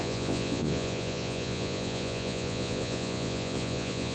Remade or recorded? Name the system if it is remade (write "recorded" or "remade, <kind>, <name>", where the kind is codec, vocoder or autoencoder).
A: remade, vocoder, Vocos